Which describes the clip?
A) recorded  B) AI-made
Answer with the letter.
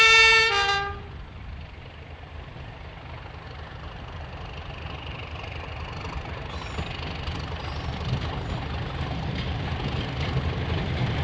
A